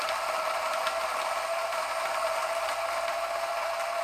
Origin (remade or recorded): remade